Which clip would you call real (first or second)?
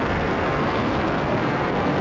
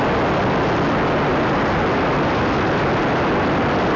second